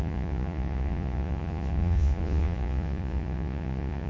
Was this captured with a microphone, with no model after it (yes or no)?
no